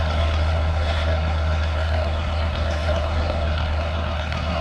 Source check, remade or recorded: remade